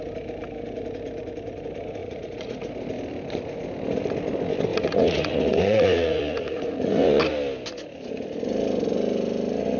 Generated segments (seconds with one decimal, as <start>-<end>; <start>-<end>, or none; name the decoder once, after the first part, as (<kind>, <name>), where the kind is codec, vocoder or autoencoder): 2.0-2.7 (vocoder, Vocos); 4.7-7.2